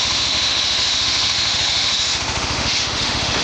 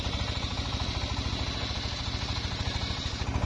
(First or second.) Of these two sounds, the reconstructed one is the first